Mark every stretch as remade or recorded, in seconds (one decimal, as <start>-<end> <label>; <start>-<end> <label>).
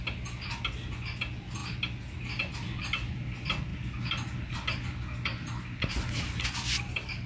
0.0-7.3 recorded